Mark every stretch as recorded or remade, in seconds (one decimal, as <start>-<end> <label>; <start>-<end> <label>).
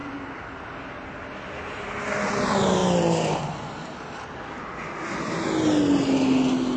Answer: 0.0-0.5 remade; 0.5-2.8 recorded; 2.8-3.4 remade; 3.4-6.8 recorded